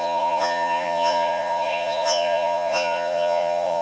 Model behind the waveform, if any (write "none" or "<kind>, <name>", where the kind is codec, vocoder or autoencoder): vocoder, Vocos